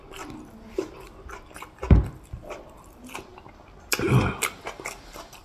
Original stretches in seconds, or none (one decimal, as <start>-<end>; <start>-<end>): 0.0-5.4